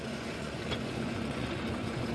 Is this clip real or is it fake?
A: fake